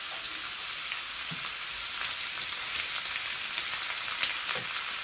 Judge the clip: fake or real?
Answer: real